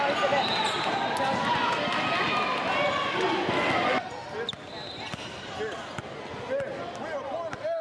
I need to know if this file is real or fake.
real